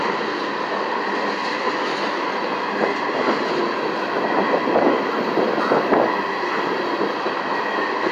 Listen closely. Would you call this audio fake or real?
real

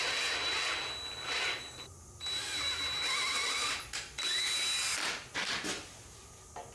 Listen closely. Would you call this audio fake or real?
real